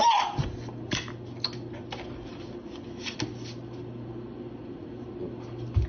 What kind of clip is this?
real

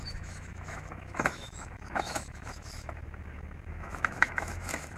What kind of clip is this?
fake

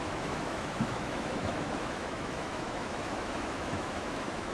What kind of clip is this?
fake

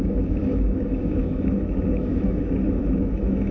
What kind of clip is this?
fake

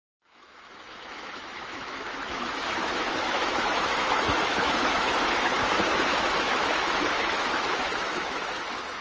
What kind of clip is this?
fake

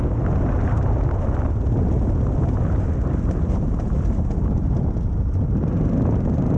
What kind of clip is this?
real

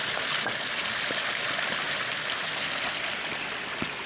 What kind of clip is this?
real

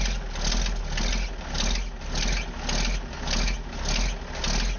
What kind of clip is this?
real